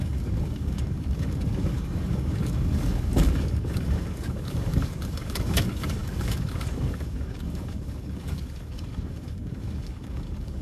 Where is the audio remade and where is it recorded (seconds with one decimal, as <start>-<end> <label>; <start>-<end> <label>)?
0.0-10.6 remade